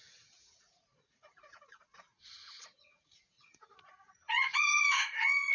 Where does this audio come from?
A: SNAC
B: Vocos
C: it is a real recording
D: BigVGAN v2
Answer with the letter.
B